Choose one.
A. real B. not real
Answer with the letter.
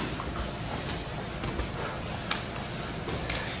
A